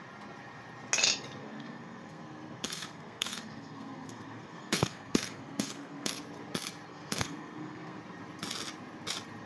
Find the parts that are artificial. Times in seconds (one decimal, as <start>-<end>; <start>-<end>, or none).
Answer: 1.4-6.2; 6.9-8.0